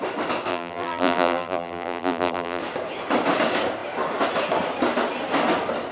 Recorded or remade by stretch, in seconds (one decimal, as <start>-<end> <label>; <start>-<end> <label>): 0.0-0.5 recorded; 0.5-2.6 remade; 2.6-5.9 recorded